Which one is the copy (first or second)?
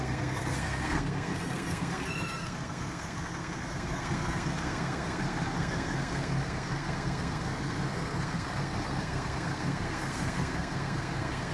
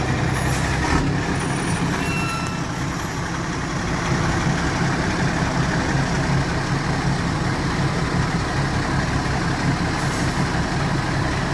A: first